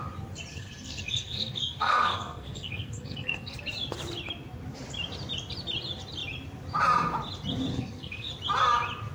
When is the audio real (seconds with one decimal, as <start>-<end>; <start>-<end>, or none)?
0.0-0.5; 3.6-7.7; 8.3-9.1